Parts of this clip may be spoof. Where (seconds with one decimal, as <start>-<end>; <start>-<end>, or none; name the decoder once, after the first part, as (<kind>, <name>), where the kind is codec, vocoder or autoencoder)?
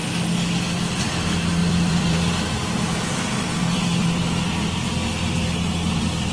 1.6-4.2 (vocoder, BigVGAN v2)